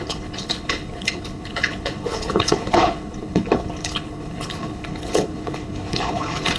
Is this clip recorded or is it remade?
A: remade